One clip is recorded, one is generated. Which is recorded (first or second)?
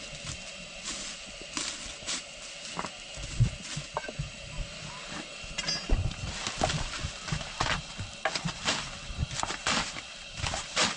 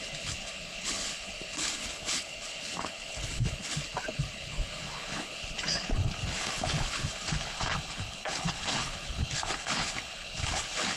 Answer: first